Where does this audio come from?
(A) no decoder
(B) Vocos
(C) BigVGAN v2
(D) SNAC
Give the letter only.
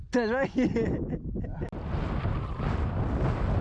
A